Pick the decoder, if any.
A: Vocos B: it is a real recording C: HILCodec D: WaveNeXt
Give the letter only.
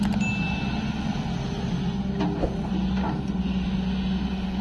B